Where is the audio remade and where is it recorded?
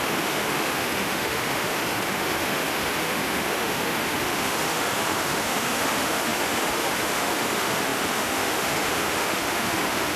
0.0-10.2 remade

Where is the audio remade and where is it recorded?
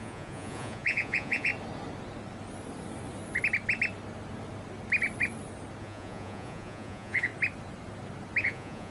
0.0-1.5 remade; 1.5-5.8 recorded; 5.8-7.3 remade; 7.3-8.4 recorded; 8.4-8.9 remade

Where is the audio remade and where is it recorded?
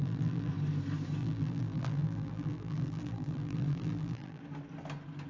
0.0-0.5 remade; 0.5-1.2 recorded; 1.2-4.4 remade; 4.4-5.3 recorded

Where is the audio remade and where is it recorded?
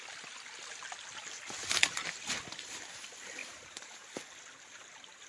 0.0-3.4 recorded; 3.4-4.2 remade; 4.2-5.3 recorded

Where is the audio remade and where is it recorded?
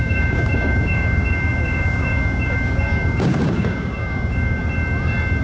0.0-4.6 remade; 4.6-5.4 recorded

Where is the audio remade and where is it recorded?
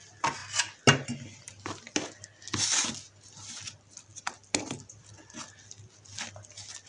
0.0-6.9 recorded